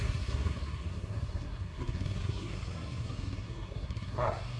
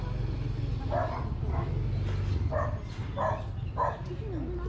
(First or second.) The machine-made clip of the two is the first